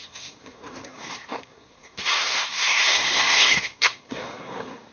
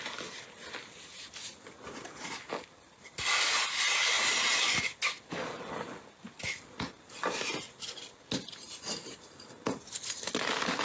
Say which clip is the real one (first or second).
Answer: second